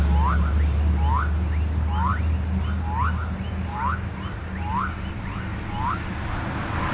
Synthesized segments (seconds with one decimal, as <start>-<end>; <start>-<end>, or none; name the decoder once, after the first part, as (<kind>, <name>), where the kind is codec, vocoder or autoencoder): none